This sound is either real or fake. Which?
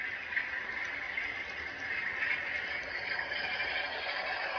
real